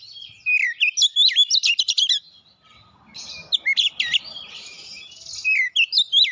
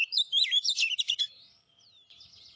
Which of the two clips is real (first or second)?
first